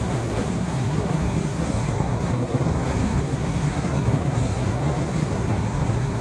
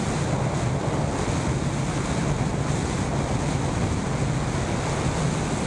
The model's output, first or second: first